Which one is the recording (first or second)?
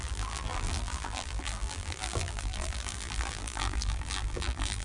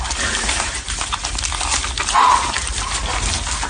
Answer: second